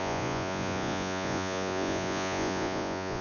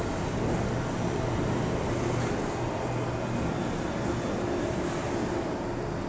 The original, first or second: second